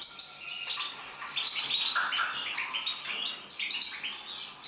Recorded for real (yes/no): yes